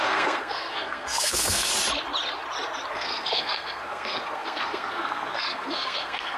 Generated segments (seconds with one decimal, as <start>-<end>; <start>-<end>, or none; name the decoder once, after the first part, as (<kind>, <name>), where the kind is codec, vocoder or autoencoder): 0.0-1.7 (codec, SNAC); 2.9-6.4